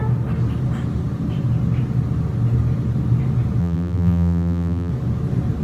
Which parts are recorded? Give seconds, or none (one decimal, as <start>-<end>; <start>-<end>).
0.0-3.6; 4.9-5.6